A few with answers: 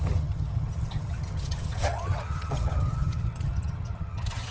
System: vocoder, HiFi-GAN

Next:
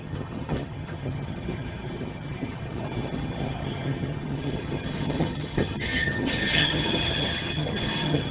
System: vocoder, HiFi-GAN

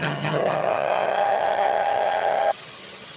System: vocoder, HiFi-GAN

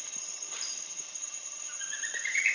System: vocoder, HiFi-GAN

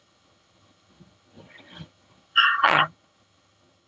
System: vocoder, HiFi-GAN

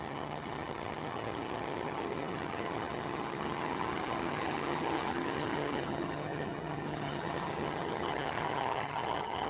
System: vocoder, HiFi-GAN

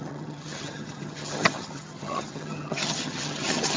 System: vocoder, HiFi-GAN